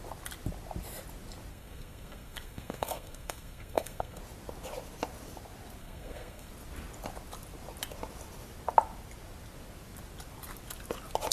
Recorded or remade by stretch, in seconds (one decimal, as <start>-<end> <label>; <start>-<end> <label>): 0.0-1.5 recorded; 1.5-4.2 remade; 4.2-5.8 recorded; 5.8-6.5 remade; 6.5-11.3 recorded